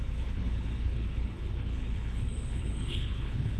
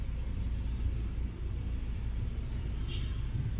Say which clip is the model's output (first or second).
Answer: first